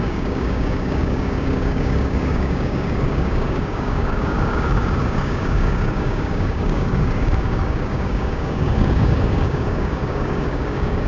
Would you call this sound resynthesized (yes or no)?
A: yes